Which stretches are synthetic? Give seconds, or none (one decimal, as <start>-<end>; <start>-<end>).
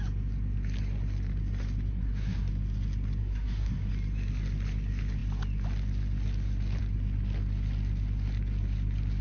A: 1.9-2.5; 3.2-3.9